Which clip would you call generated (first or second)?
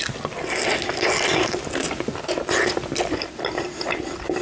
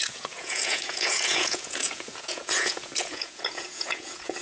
second